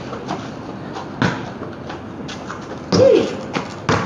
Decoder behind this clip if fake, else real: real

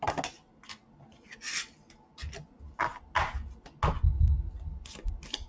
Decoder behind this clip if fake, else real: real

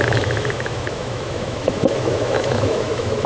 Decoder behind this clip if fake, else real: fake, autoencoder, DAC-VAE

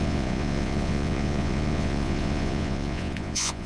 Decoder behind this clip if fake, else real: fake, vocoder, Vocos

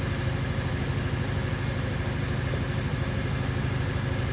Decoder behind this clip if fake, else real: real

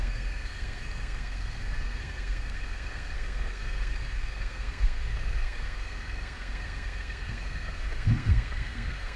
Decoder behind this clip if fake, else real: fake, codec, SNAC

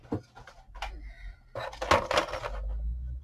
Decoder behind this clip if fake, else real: real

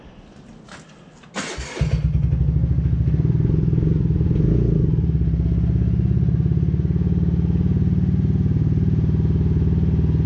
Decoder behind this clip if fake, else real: real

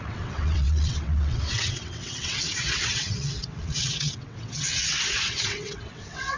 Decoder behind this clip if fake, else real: fake, vocoder, WaveNeXt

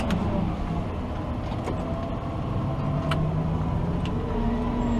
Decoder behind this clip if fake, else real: real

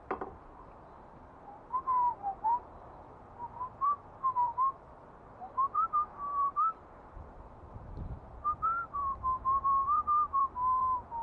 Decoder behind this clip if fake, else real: fake, vocoder, BigVGAN v2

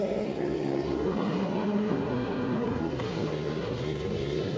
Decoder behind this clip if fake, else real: fake, codec, SNAC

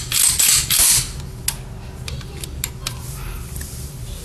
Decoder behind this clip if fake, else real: real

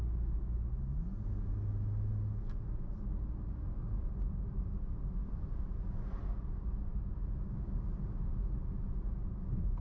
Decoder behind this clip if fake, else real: real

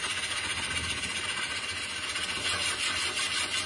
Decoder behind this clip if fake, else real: real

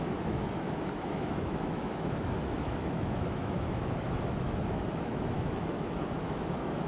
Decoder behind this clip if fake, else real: fake, autoencoder, DAC-VAE